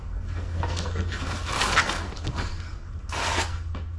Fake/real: fake